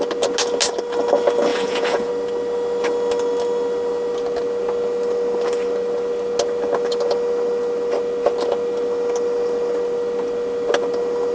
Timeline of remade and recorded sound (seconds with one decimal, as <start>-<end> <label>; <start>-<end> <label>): 0.0-1.5 recorded; 1.5-2.1 remade; 2.1-11.3 recorded